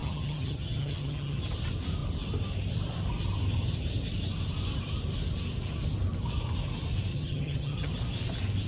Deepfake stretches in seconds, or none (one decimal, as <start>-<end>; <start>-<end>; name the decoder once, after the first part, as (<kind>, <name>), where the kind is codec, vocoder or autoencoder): 0.0-1.4 (vocoder, HiFi-GAN); 7.1-7.9